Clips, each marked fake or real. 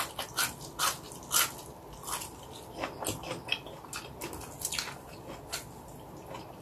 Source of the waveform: real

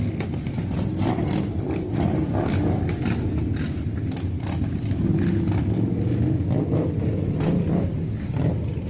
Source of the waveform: real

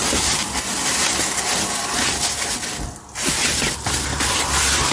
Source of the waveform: real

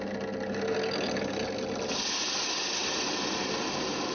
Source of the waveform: real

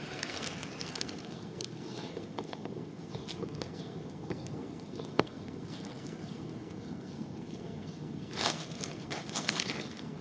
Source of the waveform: fake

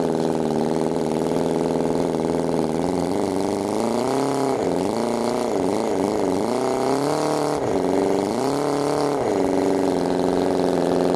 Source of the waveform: real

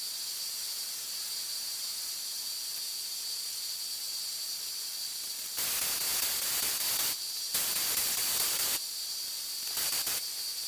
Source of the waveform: real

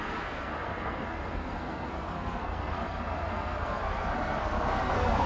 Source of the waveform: fake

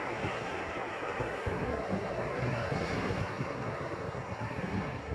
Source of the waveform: fake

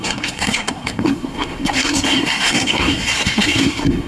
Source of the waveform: fake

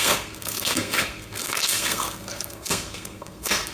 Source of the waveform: fake